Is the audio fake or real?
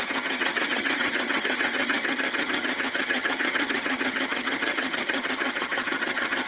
fake